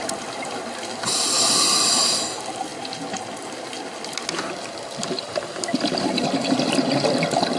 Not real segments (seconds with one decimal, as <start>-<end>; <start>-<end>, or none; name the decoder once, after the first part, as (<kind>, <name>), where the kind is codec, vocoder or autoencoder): none